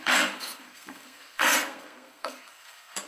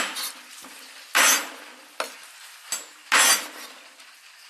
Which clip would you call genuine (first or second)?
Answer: second